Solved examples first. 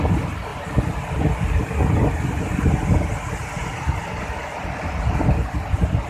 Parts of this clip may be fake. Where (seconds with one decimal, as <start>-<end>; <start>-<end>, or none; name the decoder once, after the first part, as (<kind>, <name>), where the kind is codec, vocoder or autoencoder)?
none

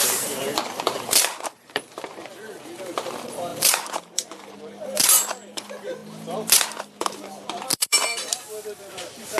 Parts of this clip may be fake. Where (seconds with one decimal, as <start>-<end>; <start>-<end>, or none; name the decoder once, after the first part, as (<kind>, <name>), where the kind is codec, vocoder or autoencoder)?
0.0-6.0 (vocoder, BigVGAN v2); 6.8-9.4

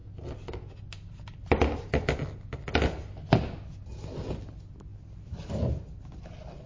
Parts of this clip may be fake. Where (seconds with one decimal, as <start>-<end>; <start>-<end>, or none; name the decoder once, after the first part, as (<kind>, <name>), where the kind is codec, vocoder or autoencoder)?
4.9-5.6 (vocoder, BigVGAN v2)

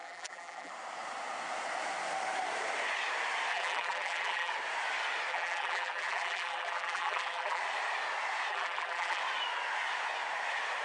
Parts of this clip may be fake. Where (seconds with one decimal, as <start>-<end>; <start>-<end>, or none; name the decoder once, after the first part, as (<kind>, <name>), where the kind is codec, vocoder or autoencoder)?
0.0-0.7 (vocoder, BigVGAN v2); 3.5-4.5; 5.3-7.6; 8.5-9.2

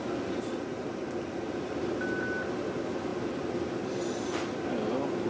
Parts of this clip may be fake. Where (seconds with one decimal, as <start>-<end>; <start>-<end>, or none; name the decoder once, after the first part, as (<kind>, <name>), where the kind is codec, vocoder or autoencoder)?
none

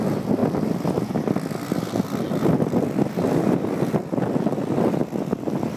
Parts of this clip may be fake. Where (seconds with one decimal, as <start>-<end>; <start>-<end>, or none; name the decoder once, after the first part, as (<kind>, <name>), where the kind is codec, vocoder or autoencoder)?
0.0-5.0 (vocoder, BigVGAN v2)

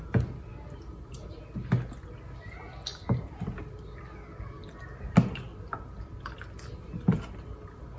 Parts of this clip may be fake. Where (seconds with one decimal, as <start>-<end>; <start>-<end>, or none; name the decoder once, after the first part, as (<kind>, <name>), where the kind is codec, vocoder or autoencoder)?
0.5-1.4 (vocoder, BigVGAN v2)

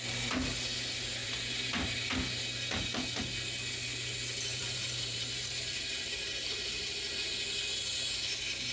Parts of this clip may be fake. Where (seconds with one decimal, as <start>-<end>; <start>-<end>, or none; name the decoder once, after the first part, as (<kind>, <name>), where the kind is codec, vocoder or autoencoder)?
1.2-2.0 (vocoder, BigVGAN v2); 4.5-7.3